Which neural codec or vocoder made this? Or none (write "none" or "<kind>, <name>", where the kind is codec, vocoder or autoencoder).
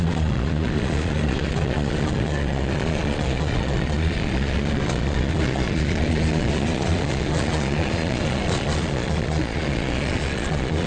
vocoder, Vocos